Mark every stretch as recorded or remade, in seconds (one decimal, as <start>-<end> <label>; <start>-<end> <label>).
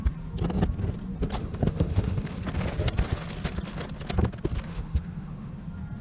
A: 0.0-1.4 recorded; 1.4-2.4 remade; 2.4-4.7 recorded; 4.7-5.5 remade; 5.5-6.0 recorded